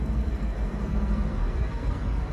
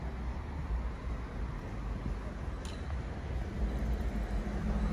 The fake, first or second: first